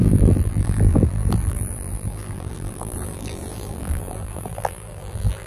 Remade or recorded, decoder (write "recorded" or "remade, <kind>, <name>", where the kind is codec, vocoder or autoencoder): remade, vocoder, BigVGAN v2